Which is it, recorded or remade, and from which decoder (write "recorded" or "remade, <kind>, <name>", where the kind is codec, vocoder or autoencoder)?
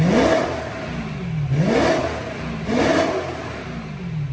recorded